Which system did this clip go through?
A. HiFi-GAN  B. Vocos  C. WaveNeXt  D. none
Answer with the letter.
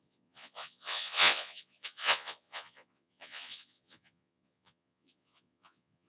B